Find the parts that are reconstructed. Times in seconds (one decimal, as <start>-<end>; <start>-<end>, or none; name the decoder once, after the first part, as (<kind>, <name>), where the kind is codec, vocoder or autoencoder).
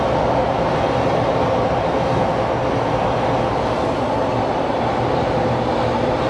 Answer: 0.4-2.3 (vocoder, BigVGAN v2)